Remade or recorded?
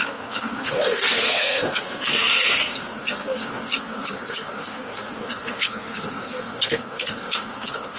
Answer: remade